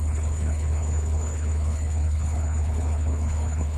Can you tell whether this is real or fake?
fake